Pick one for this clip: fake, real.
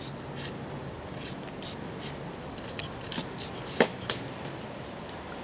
real